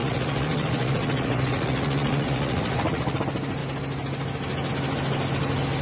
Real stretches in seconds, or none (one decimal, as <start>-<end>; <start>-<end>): 3.2-5.8